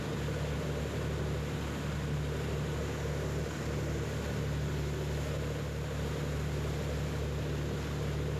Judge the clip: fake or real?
real